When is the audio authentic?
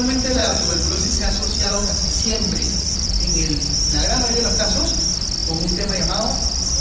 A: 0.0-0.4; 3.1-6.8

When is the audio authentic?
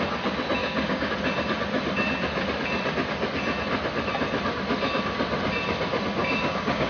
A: 0.0-0.6; 1.1-6.2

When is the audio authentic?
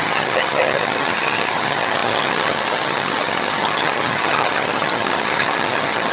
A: none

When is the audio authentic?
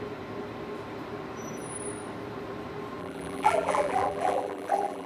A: 0.0-3.0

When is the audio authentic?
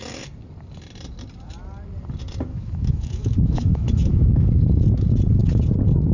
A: 0.0-2.5; 4.6-6.1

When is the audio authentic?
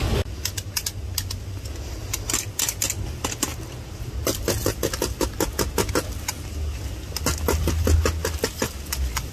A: 0.0-9.3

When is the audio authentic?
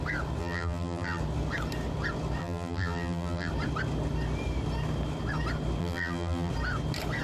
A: 0.0-0.4; 1.2-2.4; 3.5-5.8; 6.5-7.2